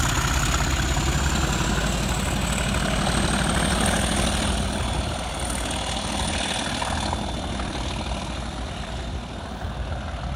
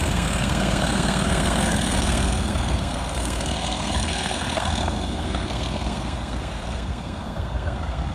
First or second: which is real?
first